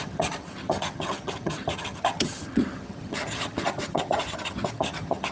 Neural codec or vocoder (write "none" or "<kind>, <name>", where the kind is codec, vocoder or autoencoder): vocoder, HiFi-GAN